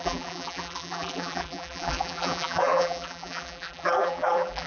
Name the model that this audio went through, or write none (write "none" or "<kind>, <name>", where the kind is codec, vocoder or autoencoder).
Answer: vocoder, BigVGAN v2